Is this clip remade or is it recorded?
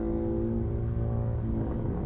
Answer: remade